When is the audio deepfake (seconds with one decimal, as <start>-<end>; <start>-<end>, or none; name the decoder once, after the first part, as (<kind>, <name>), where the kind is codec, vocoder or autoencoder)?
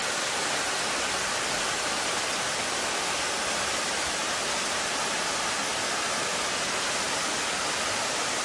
4.2-5.6 (vocoder, BigVGAN v2); 6.3-6.8